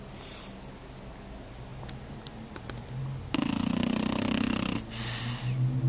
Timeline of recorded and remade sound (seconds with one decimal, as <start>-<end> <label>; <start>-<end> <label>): 0.0-5.9 recorded